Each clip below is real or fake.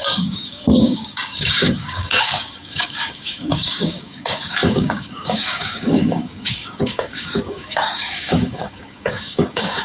fake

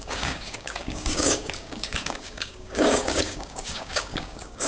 fake